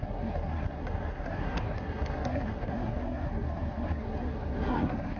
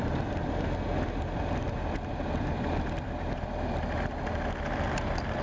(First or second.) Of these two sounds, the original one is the second